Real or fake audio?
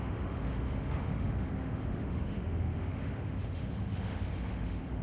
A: fake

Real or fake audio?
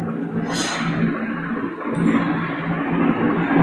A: real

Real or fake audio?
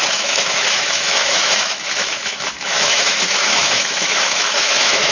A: fake